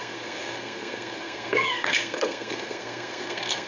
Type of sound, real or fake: fake